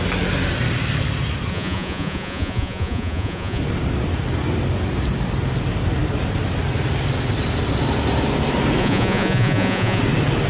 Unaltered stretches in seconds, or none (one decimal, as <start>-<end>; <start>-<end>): 0.0-1.5; 3.6-8.8; 10.0-10.5